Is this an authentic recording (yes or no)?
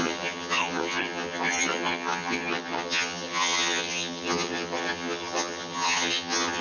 no